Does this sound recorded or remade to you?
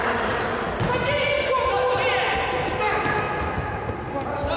recorded